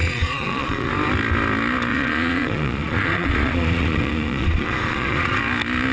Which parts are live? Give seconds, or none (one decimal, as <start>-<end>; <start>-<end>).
0.9-1.9; 5.4-5.9